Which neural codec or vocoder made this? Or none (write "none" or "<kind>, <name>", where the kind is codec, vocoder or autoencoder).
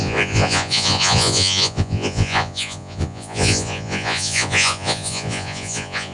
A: vocoder, Vocos